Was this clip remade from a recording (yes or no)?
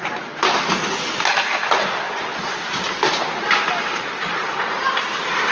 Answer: no